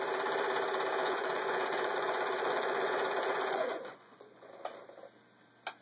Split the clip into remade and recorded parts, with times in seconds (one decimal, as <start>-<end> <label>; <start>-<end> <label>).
0.0-1.0 recorded; 1.0-4.5 remade; 4.5-5.8 recorded